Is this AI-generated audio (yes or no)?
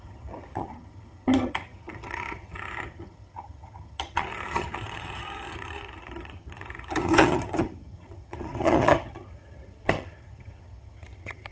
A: yes